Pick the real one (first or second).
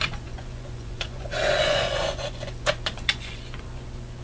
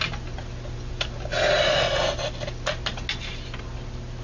second